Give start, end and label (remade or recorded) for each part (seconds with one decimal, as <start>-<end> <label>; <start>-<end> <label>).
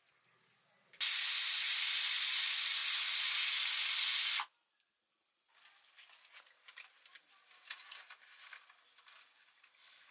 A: 0.0-10.1 recorded